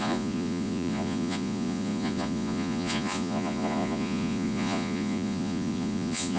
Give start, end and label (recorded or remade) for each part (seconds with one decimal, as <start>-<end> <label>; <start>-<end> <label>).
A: 0.0-6.4 remade